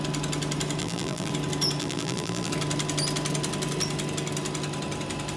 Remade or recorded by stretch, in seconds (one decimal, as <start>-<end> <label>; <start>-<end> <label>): 0.0-0.8 recorded; 0.8-1.3 remade; 1.3-1.8 recorded; 1.8-2.5 remade; 2.5-5.4 recorded